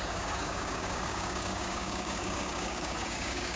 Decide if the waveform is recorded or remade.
remade